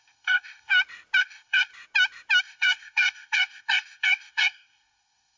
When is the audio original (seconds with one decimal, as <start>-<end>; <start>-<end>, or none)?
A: 0.7-1.2; 1.7-2.4